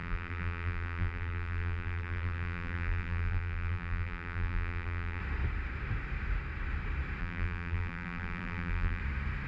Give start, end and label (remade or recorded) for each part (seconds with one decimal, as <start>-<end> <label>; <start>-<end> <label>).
0.0-5.2 remade; 5.2-7.2 recorded; 7.2-9.0 remade; 9.0-9.5 recorded